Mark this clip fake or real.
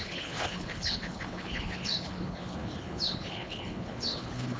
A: fake